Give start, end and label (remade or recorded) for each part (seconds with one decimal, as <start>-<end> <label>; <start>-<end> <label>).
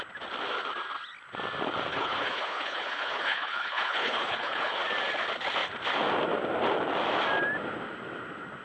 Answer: 0.0-1.9 recorded; 1.9-4.8 remade; 4.8-8.6 recorded